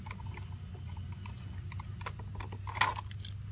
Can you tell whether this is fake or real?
real